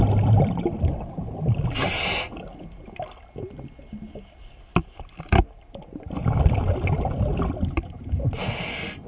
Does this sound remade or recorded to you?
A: recorded